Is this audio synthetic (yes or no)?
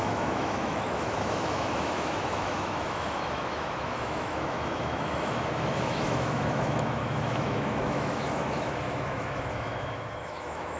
yes